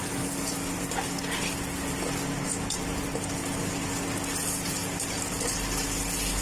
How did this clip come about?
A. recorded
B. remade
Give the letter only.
A